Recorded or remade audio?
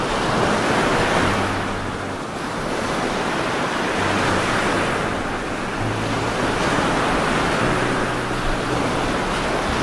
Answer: recorded